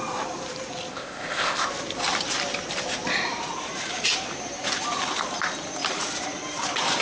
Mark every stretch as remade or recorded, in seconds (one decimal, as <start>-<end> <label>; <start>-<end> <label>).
0.0-0.9 recorded; 0.9-1.7 remade; 1.7-7.0 recorded